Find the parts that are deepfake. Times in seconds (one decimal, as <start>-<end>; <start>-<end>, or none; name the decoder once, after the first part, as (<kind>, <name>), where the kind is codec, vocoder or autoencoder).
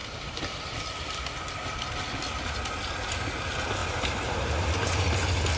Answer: 0.0-2.9 (vocoder, BigVGAN v2); 3.8-4.5